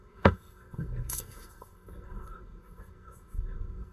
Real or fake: fake